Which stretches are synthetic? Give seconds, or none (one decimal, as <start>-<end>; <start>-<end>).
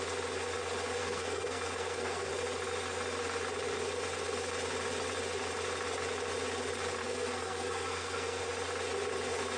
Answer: 1.0-2.3; 7.0-8.4